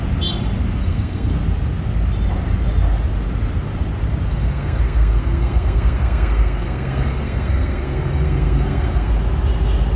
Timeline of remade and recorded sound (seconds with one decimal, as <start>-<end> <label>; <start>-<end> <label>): 0.0-0.8 recorded; 0.8-1.3 remade; 1.3-4.3 recorded; 4.3-9.1 remade; 9.1-10.0 recorded

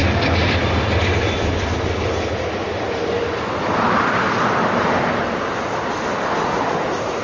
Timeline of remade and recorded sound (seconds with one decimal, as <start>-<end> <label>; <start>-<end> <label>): 0.0-7.2 recorded

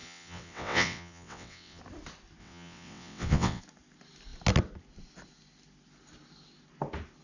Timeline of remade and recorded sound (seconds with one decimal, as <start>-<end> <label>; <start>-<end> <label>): 0.0-1.8 remade; 1.8-2.4 recorded; 2.4-3.6 remade; 3.6-7.2 recorded

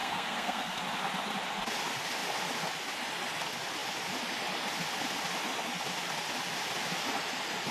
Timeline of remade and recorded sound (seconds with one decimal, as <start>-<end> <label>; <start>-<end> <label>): 0.0-0.8 remade; 0.8-7.7 recorded

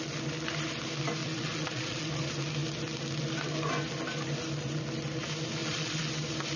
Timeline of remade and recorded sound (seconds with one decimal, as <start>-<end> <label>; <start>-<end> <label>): 0.0-1.2 recorded; 1.2-2.1 remade; 2.1-5.6 recorded; 5.6-6.1 remade; 6.1-6.6 recorded